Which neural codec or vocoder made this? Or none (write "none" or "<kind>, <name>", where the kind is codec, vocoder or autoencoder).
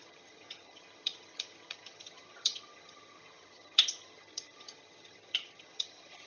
vocoder, HiFi-GAN